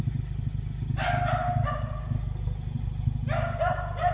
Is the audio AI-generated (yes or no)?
no